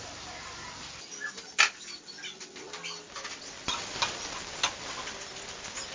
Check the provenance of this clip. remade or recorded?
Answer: recorded